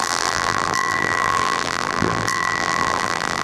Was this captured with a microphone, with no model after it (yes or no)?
no